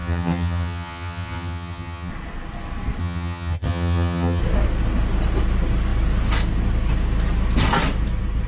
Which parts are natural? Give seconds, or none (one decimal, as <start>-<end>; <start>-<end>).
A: 2.1-3.0; 4.4-8.5